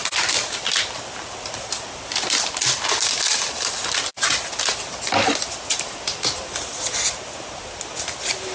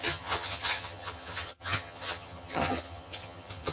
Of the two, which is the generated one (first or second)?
second